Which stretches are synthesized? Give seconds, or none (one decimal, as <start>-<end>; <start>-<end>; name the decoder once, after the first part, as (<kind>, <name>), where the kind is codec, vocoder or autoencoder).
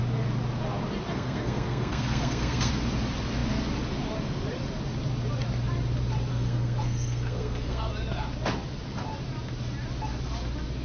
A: 1.1-2.7 (codec, SNAC); 6.3-7.9